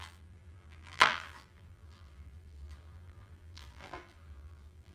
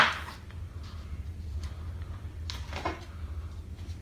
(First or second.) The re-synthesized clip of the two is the first